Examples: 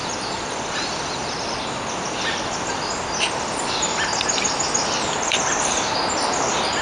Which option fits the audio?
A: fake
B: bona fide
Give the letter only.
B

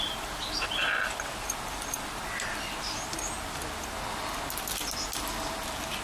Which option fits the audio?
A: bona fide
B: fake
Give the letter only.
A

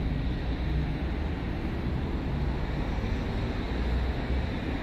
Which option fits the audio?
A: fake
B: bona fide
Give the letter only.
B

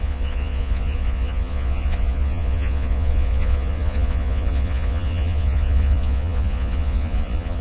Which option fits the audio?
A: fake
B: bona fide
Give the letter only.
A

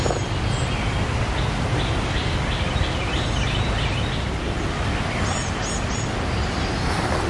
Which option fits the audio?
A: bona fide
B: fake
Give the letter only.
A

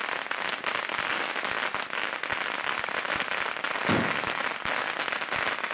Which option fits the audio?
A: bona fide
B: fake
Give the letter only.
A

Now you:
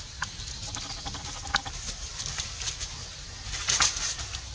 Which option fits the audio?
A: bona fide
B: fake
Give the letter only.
A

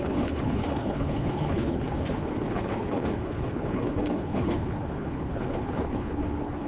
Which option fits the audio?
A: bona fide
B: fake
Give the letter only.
B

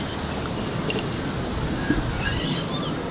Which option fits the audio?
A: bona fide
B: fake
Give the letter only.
A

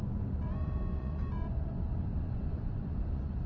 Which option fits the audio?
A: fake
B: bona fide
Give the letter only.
A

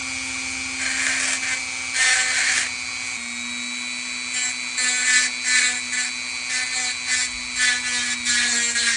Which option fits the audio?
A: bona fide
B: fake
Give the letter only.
A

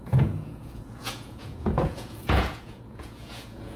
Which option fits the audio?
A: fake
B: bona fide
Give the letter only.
A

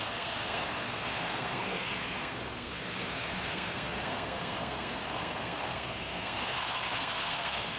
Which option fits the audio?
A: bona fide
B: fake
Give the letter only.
B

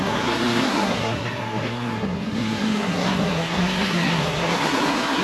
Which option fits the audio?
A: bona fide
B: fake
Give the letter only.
B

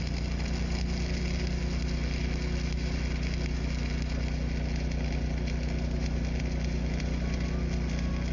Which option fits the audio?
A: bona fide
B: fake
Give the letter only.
A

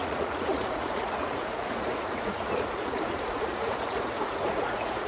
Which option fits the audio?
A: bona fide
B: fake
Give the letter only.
B